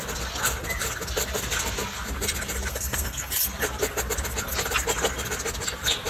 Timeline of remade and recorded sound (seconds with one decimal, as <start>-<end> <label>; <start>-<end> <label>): 0.0-2.7 recorded; 2.7-3.3 remade; 3.3-6.1 recorded